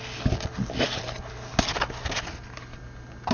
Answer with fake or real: real